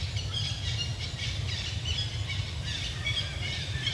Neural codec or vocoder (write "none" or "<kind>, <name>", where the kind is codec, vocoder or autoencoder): vocoder, BigVGAN v2